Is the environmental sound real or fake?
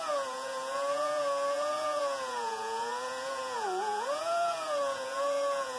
fake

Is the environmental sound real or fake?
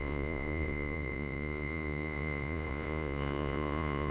fake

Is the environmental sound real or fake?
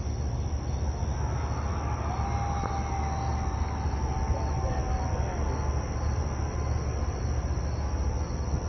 real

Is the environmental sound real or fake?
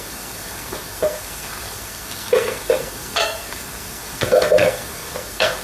fake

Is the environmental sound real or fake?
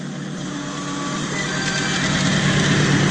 real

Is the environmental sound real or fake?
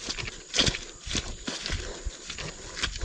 real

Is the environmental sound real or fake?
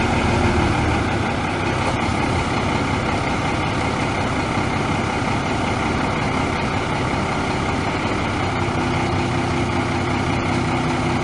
real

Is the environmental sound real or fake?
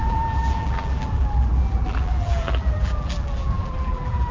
fake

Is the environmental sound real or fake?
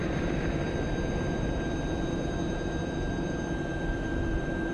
fake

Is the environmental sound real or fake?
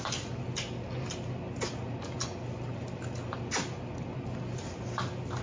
real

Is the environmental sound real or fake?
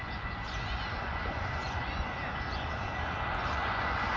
fake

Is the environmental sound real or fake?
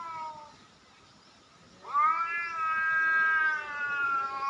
real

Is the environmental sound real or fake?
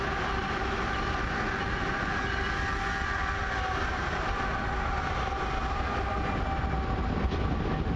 real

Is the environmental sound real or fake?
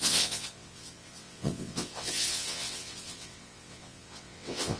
fake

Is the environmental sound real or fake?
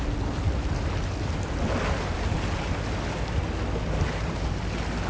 real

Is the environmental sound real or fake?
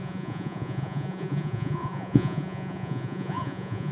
fake